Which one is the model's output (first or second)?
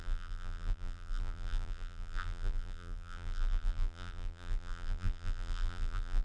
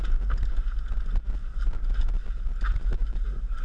first